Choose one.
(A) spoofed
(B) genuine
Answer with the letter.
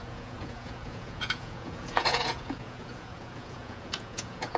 A